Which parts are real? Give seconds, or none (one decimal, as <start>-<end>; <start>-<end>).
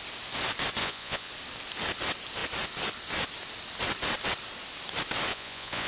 0.0-0.8; 1.3-5.3